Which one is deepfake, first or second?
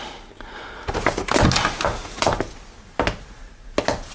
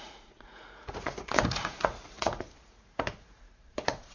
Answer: second